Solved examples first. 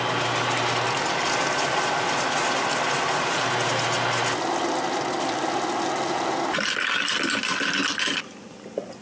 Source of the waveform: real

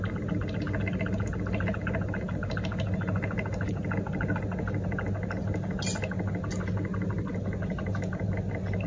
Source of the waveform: real